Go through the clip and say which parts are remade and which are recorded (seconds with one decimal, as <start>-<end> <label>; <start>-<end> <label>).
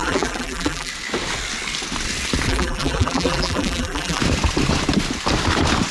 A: 0.0-0.9 remade; 0.9-2.5 recorded; 2.5-4.2 remade; 4.2-5.9 recorded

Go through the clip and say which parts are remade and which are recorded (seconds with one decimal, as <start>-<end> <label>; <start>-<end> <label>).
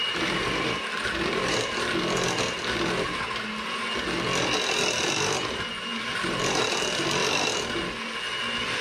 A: 0.0-1.6 remade; 1.6-5.9 recorded; 5.9-6.6 remade; 6.6-8.8 recorded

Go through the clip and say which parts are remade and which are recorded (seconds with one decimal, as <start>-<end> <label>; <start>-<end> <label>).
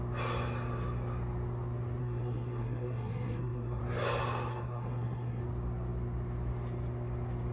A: 0.0-2.0 recorded; 2.0-3.8 remade; 3.8-4.5 recorded; 4.5-5.4 remade; 5.4-7.5 recorded